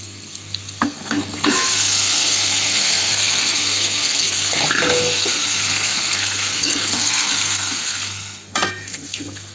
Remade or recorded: remade